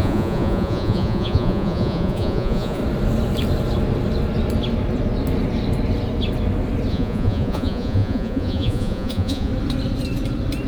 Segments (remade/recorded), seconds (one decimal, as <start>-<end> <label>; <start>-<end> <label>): 0.0-2.8 remade; 2.8-6.9 recorded; 6.9-9.5 remade; 9.5-10.7 recorded